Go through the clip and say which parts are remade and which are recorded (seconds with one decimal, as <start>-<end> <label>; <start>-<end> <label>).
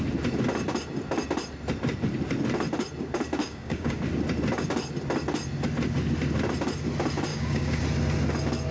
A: 0.0-3.4 recorded; 3.4-4.0 remade; 4.0-7.3 recorded; 7.3-7.8 remade; 7.8-8.7 recorded